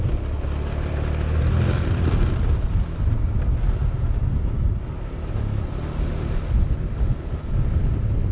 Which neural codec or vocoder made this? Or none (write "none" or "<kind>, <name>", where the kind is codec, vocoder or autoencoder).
none